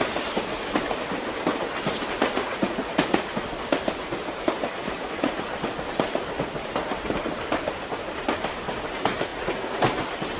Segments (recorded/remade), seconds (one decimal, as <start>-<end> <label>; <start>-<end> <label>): 0.0-2.4 recorded; 2.4-3.3 remade; 3.3-9.3 recorded; 9.3-9.8 remade; 9.8-10.4 recorded